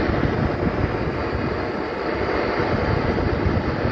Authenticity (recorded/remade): recorded